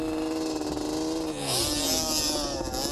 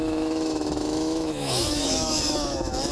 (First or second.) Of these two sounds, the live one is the first